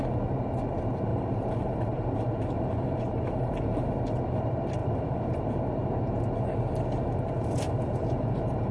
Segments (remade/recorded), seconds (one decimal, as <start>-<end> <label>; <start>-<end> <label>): 0.0-1.1 recorded; 1.1-3.9 remade; 3.9-4.8 recorded; 4.8-5.5 remade; 5.5-7.4 recorded; 7.4-8.7 remade